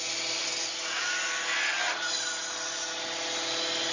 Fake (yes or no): no